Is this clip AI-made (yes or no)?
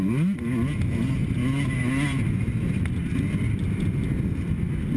no